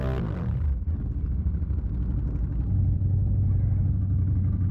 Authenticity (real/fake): real